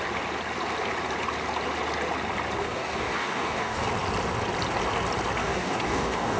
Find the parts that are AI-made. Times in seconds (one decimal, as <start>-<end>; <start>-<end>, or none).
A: 2.6-3.9; 5.4-6.4